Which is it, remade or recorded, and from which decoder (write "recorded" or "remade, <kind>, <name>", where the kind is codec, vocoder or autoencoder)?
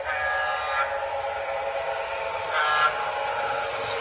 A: recorded